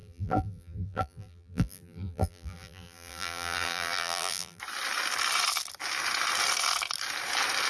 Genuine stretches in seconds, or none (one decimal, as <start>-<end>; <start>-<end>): 4.6-7.7

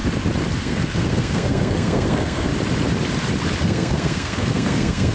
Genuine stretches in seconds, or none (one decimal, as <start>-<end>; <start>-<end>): 0.0-0.6; 2.5-3.6